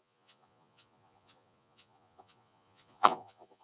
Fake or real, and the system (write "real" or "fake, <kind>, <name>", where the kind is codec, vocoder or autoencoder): fake, vocoder, Vocos